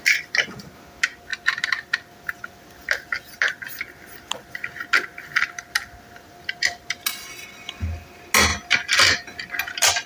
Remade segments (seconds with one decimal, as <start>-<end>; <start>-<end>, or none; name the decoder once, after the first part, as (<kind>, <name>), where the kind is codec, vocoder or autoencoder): none